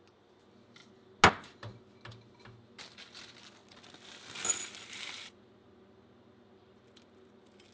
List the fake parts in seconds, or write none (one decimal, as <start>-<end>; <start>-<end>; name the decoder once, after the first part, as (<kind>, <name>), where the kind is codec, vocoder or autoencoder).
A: none